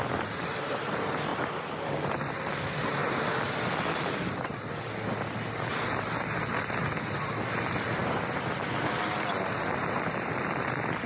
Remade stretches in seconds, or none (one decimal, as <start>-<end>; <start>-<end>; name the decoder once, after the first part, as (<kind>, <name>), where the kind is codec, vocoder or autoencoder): none